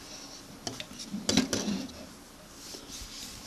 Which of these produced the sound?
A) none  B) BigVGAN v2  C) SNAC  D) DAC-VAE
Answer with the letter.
A